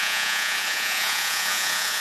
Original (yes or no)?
no